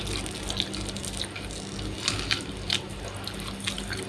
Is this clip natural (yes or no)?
yes